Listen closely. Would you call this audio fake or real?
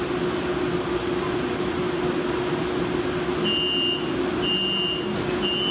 real